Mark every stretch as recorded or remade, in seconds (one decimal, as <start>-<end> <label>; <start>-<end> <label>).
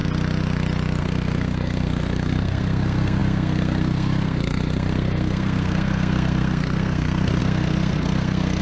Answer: 0.0-1.0 recorded; 1.0-8.6 remade